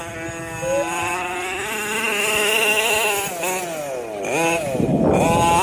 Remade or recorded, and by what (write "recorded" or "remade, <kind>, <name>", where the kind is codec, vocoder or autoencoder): recorded